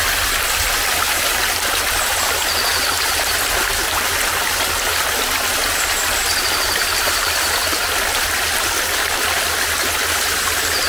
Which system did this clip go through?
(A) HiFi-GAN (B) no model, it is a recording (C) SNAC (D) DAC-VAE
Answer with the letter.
B